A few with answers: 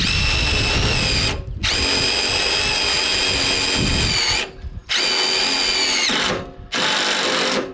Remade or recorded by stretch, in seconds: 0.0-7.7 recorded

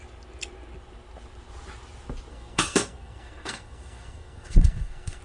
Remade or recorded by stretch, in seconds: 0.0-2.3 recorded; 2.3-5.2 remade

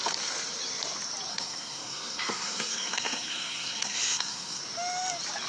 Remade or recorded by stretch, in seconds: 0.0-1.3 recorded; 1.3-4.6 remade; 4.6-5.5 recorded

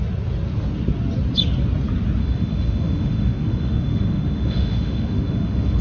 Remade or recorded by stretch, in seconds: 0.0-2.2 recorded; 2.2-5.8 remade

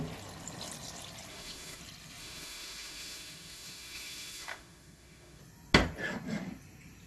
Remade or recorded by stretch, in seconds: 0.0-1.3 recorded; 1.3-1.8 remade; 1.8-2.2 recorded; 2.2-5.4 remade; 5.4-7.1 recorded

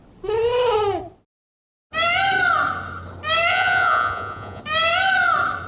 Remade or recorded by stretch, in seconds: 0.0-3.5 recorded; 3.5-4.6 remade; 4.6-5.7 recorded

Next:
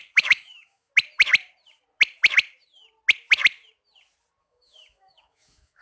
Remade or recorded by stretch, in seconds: 0.0-0.9 remade; 0.9-4.4 recorded; 4.4-5.8 remade